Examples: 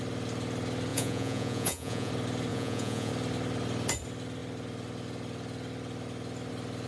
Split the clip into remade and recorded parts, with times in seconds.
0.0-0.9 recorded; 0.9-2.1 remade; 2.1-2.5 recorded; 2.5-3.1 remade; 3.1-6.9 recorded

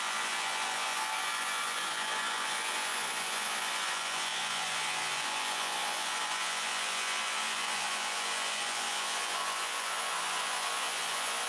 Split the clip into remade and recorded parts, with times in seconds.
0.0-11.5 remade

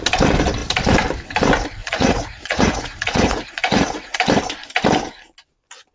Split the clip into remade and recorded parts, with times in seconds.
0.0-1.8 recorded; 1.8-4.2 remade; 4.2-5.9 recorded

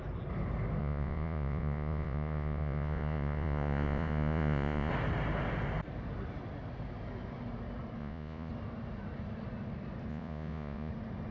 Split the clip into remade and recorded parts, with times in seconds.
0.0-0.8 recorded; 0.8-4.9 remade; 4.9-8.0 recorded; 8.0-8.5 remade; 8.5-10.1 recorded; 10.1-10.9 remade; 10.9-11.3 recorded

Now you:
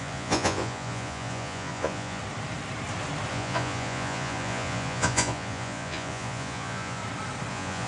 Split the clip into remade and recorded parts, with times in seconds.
0.0-2.2 remade; 2.2-3.3 recorded; 3.3-7.0 remade; 7.0-7.5 recorded; 7.5-7.9 remade

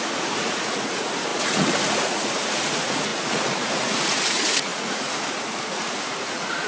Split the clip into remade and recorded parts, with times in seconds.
0.0-6.7 remade

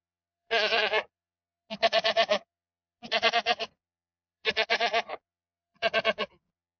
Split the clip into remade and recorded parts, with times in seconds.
0.0-6.8 remade